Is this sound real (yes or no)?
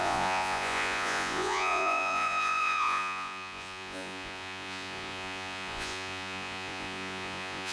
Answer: no